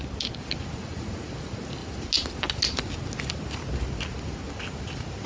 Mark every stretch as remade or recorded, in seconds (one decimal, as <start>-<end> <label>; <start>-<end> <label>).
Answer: 0.0-0.8 recorded; 0.8-1.3 remade; 1.3-5.3 recorded